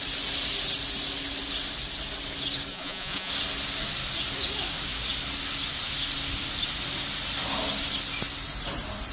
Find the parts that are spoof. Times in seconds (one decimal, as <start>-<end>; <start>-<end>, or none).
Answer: 2.7-3.3